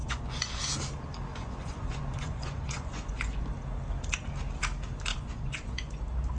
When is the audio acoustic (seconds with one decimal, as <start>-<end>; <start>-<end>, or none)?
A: 0.6-1.3; 3.5-5.1; 6.0-6.4